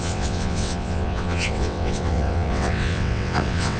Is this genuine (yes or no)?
no